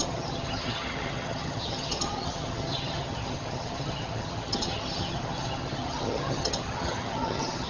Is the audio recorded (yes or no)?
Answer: no